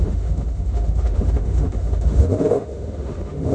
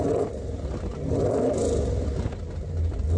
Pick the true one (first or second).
second